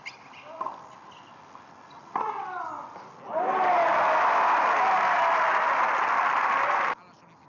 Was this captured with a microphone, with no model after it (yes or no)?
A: yes